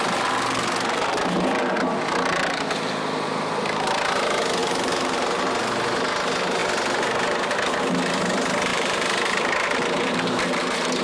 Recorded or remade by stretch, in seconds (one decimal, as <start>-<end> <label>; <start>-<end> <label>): 0.0-4.6 recorded; 4.6-5.4 remade; 5.4-8.7 recorded; 8.7-11.0 remade